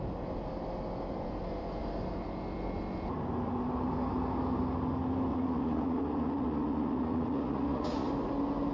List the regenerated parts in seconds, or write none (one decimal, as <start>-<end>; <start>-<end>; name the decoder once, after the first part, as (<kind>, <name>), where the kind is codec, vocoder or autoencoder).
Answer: 5.3-8.1 (vocoder, Vocos)